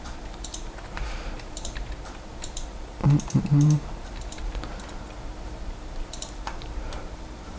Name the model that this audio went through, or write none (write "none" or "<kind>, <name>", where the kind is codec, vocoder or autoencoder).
vocoder, BigVGAN v2